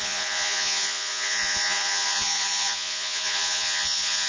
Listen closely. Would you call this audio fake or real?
fake